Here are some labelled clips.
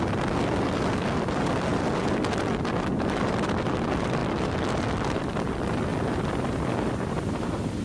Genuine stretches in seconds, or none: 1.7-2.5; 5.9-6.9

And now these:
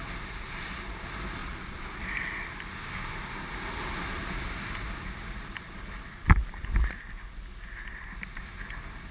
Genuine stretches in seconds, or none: 0.0-1.4; 2.0-9.1

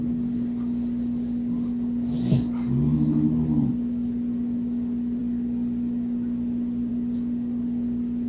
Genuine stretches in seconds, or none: 0.0-8.3

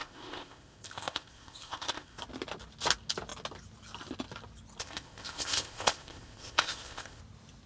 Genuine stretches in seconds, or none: 2.2-4.8; 7.2-7.7